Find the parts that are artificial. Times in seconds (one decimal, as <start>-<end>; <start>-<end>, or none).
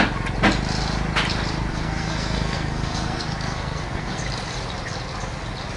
1.7-4.2